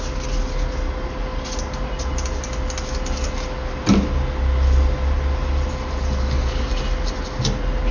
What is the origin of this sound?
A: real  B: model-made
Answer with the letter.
A